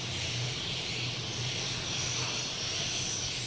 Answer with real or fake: real